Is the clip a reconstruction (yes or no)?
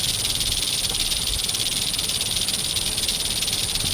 no